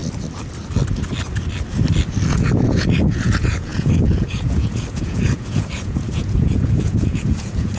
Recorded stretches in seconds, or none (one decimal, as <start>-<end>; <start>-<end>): 0.0-2.3